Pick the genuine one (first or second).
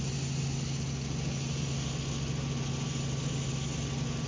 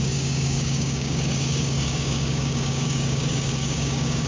first